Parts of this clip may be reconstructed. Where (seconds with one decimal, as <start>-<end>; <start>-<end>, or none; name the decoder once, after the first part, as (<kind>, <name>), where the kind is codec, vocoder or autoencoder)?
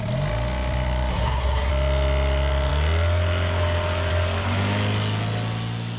1.1-1.7 (codec, SNAC)